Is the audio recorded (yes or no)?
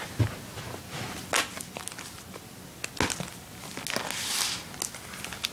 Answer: yes